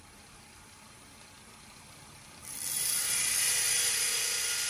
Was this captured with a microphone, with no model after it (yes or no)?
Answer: no